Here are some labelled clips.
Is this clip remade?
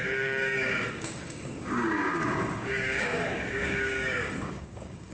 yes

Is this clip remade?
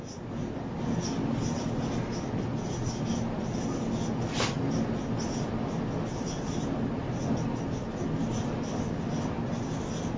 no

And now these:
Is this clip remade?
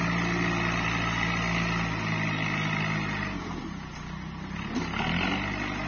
no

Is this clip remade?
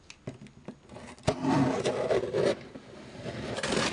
no